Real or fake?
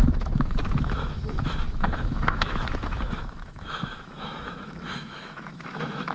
fake